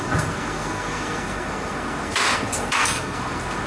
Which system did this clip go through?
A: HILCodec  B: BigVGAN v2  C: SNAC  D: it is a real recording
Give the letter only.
C